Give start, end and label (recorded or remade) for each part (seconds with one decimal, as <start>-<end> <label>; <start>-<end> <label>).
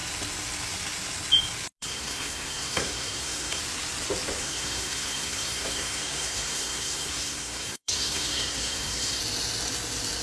0.0-1.8 recorded; 1.8-3.6 remade; 3.6-4.4 recorded; 4.4-9.2 remade; 9.2-10.2 recorded